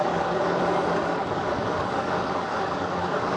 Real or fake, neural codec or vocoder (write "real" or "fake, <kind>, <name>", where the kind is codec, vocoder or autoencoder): fake, codec, DAC